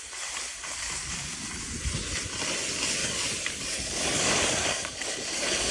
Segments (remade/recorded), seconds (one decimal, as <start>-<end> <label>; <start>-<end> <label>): 0.0-1.0 recorded; 1.0-1.6 remade; 1.6-3.0 recorded; 3.0-5.7 remade